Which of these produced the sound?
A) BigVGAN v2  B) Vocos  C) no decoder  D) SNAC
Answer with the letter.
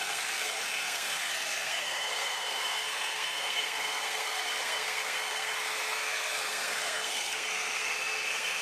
D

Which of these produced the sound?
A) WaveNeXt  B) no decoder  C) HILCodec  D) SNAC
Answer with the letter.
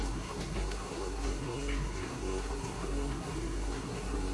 D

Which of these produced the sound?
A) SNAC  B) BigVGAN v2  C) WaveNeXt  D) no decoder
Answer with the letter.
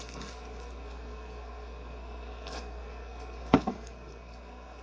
A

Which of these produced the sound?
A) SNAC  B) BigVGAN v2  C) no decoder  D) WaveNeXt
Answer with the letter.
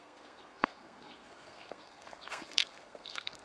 A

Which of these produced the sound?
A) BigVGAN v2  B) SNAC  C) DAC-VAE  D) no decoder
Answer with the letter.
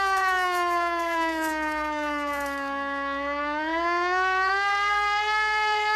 B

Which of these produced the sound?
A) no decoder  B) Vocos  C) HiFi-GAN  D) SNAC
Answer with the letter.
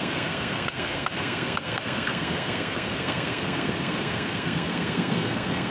D